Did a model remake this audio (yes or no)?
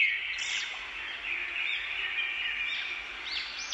no